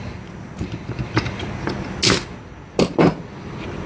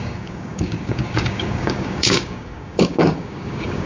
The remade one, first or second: second